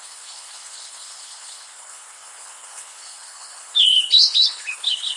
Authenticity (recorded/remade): remade